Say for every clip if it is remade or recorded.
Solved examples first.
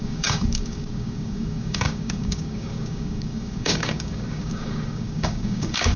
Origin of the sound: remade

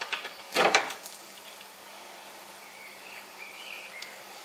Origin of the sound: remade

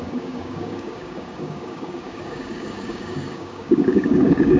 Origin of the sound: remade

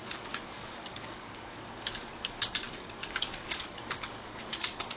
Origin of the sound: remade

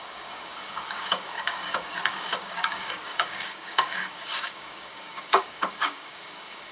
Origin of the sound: remade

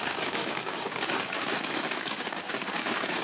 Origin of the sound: remade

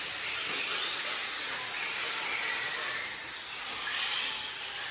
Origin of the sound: recorded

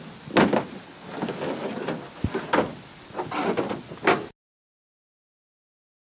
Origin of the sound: recorded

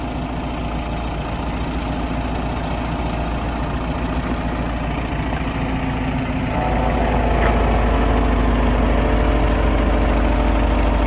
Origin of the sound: recorded